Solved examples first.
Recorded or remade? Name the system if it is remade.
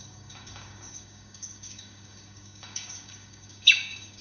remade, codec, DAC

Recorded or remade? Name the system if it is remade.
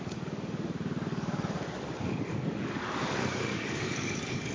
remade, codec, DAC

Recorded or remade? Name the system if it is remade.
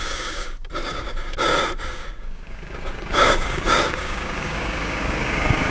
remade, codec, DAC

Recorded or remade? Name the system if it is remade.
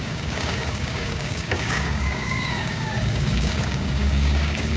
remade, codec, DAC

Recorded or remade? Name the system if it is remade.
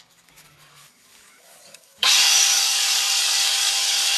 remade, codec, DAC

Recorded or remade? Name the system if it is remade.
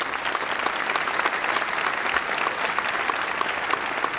recorded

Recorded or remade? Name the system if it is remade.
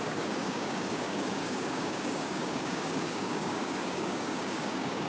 remade, codec, DAC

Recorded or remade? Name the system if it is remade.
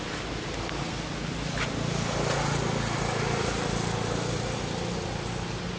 recorded